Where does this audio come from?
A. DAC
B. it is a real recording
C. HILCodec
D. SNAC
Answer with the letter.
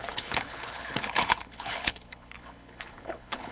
C